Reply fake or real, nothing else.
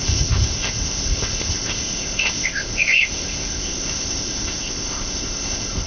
fake